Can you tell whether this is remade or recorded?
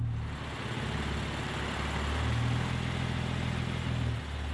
recorded